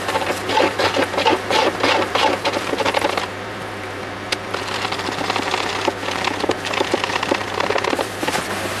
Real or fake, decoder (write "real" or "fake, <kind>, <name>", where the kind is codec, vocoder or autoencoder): fake, vocoder, BigVGAN v2